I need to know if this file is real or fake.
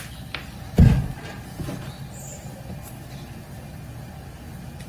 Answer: real